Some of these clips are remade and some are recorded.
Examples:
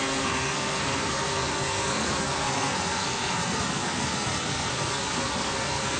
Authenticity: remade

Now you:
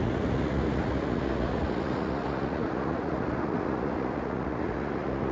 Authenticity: remade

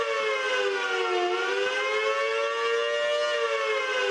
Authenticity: recorded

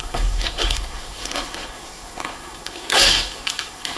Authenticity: remade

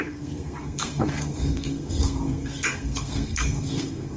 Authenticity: remade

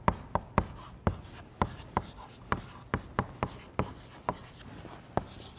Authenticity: recorded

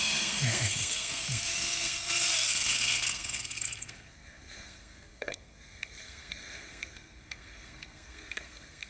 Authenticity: remade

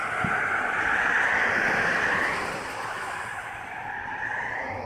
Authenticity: recorded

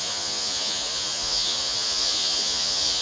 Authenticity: remade